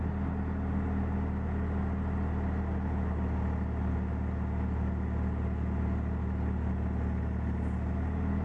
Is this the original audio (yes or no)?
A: yes